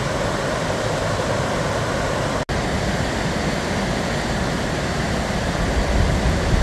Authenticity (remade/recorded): recorded